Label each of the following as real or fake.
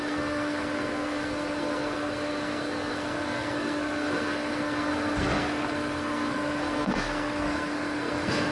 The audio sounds fake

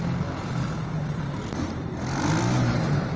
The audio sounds real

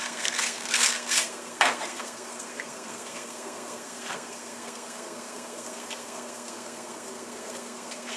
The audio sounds fake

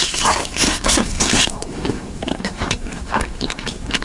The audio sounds fake